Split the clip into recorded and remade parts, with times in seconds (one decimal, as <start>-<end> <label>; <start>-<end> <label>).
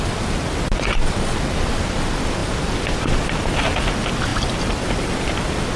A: 0.0-5.8 recorded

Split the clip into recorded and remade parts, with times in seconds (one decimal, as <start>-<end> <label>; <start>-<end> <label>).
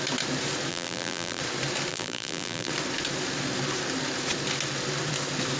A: 0.0-0.7 recorded; 0.7-1.4 remade; 1.4-1.9 recorded; 1.9-2.7 remade; 2.7-5.6 recorded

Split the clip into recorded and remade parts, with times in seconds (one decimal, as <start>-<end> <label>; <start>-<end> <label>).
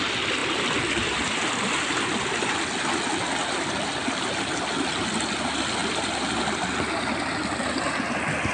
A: 0.0-0.4 recorded; 0.4-1.6 remade; 1.6-3.4 recorded; 3.4-4.2 remade; 4.2-5.8 recorded; 5.8-6.4 remade; 6.4-8.5 recorded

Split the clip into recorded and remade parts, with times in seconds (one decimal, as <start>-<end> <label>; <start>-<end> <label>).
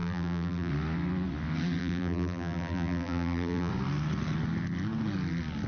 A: 0.0-0.7 remade; 0.7-1.8 recorded; 1.8-3.7 remade; 3.7-5.7 recorded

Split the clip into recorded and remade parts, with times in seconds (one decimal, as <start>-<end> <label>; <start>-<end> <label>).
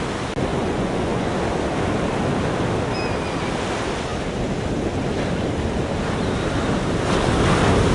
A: 0.0-0.5 recorded; 0.5-1.3 remade; 1.3-7.9 recorded